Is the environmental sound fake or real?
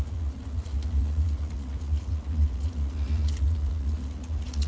fake